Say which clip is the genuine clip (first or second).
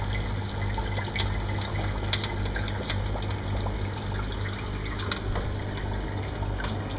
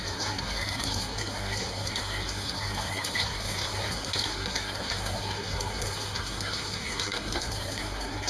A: first